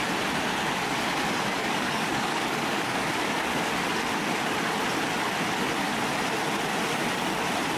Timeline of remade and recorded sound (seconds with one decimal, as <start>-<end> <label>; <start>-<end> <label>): 0.0-1.6 recorded; 1.6-3.7 remade; 3.7-7.8 recorded